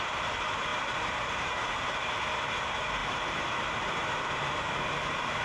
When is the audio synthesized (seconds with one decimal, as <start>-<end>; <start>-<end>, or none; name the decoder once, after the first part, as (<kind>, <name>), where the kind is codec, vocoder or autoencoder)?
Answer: 0.7-1.9 (vocoder, BigVGAN v2); 3.0-4.9